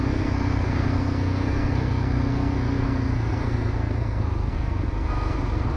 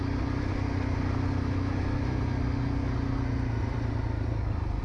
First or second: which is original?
second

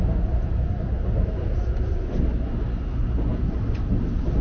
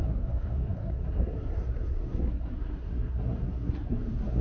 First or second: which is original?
first